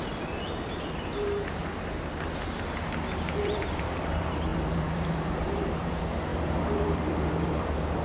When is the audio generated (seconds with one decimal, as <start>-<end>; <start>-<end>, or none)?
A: 0.0-1.6; 3.4-8.0